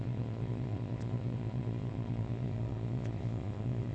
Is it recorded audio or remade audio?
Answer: remade